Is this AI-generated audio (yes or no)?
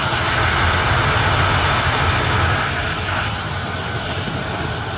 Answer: no